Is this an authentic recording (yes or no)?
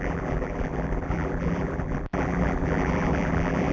no